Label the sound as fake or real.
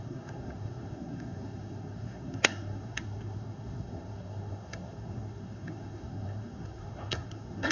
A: fake